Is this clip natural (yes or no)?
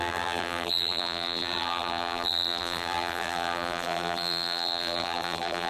no